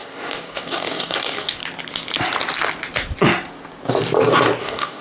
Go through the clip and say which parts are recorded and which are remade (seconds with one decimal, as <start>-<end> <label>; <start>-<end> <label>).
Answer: 0.0-1.6 remade; 1.6-4.6 recorded; 4.6-5.0 remade